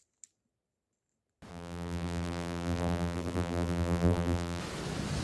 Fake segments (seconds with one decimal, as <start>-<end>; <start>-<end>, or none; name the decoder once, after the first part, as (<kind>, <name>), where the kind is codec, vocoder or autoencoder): 1.5-4.6 (vocoder, BigVGAN v2)